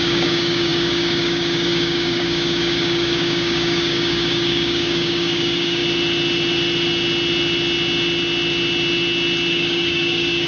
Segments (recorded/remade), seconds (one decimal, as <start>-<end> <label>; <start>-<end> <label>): 0.0-5.8 remade; 5.8-9.5 recorded; 9.5-10.5 remade